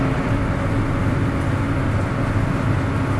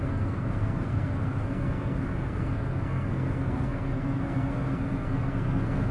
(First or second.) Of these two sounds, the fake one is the second